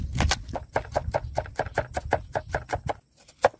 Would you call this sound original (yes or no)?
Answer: yes